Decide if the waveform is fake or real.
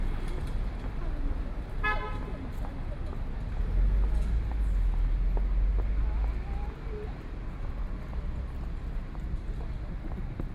real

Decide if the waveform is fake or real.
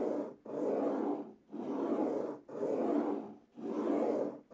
real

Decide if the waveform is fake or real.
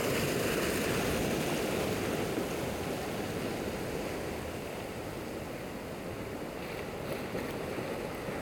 real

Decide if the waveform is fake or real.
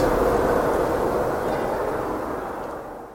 real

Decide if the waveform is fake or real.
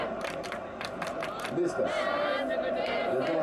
fake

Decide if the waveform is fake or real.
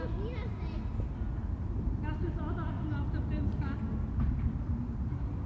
real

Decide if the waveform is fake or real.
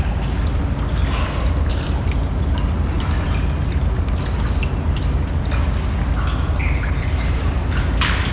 real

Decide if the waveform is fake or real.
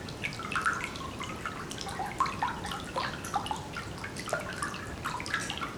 real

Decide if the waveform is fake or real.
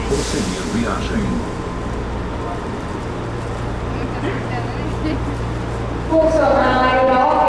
real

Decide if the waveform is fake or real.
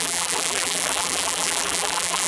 fake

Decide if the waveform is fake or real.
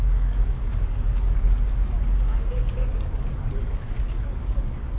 fake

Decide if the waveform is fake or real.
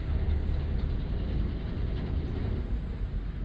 real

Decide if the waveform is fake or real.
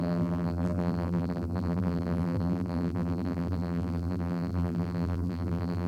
fake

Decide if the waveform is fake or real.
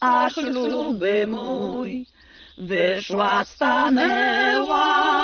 fake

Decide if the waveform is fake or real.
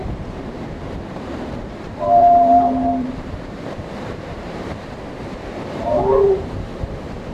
fake